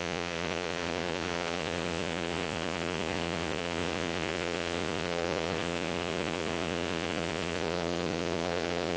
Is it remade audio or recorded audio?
remade